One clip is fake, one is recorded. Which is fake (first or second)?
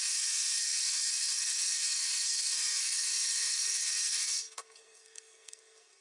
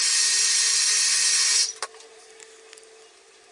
first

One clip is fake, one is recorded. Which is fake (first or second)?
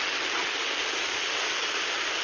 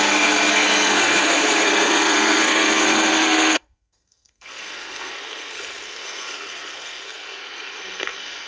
second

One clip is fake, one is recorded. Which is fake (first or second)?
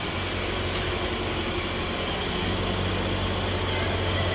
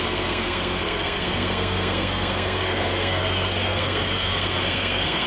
second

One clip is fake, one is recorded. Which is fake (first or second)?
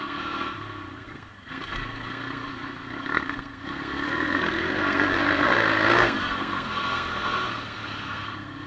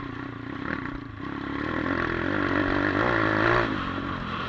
first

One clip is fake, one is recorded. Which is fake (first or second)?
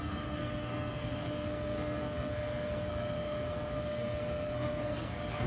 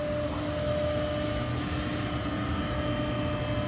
first